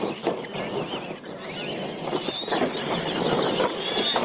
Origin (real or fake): real